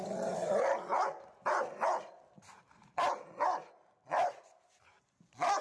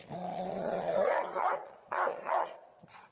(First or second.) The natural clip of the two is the first